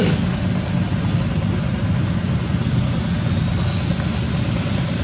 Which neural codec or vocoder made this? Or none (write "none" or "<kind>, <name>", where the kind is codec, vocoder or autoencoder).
none